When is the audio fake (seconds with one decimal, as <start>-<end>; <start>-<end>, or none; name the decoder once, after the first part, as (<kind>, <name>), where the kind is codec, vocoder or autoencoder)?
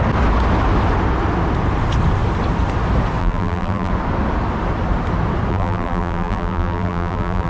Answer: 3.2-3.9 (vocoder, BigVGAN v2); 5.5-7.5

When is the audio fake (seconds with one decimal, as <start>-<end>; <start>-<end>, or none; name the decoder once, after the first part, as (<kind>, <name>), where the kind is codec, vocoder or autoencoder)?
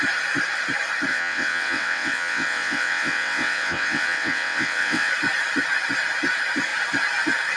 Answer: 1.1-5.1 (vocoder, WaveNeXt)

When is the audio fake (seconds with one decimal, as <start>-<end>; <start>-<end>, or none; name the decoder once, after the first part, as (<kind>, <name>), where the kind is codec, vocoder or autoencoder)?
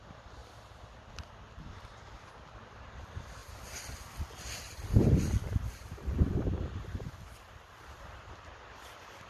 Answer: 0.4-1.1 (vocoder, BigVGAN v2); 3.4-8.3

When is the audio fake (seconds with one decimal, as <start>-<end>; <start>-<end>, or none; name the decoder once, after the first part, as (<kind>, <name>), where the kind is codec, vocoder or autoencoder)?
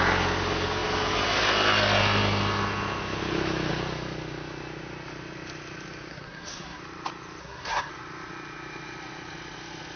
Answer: 6.1-6.8 (codec, SNAC); 7.4-7.9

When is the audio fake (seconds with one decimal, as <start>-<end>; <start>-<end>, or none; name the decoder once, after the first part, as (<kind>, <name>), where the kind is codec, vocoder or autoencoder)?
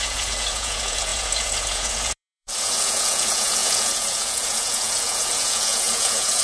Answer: 0.0-6.4 (vocoder, Vocos)